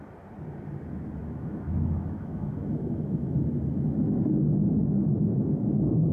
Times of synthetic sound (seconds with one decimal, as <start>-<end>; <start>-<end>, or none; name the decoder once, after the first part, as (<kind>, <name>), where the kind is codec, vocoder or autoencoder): 1.2-3.5 (autoencoder, DAC-VAE); 4.8-6.1